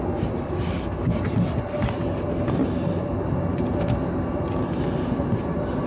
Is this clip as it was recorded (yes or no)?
yes